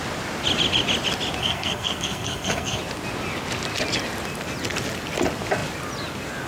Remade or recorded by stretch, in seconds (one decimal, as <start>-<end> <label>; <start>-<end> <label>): 0.0-1.4 recorded; 1.4-2.8 remade; 2.8-6.5 recorded